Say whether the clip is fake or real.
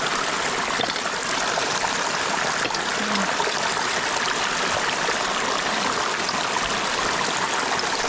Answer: real